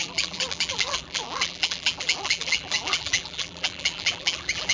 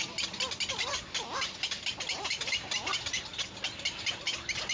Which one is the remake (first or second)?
first